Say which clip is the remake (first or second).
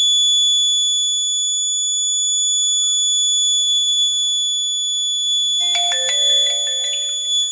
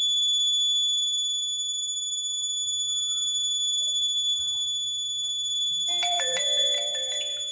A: second